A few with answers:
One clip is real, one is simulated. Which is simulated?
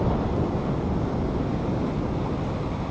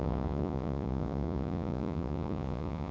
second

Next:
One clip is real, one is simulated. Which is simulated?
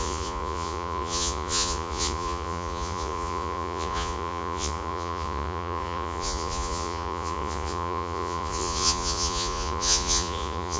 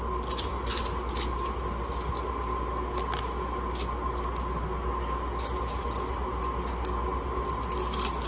first